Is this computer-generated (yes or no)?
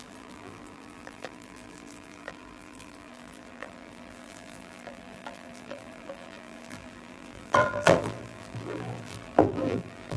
yes